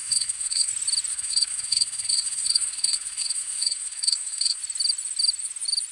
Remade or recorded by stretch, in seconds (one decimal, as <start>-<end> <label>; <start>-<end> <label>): 0.0-0.7 remade; 0.7-1.1 recorded; 1.1-4.6 remade; 4.6-5.9 recorded